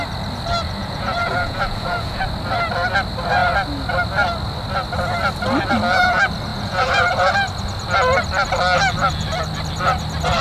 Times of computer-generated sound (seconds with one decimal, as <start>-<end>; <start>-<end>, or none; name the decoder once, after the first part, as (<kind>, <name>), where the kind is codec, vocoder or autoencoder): 0.8-2.2 (vocoder, Vocos); 6.5-7.3